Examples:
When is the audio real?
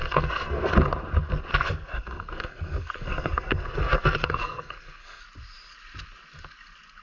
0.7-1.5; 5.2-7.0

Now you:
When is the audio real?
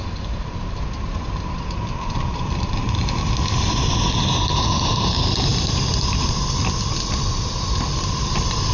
3.4-5.5; 6.4-8.7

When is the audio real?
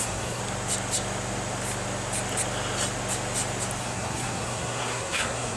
0.4-3.8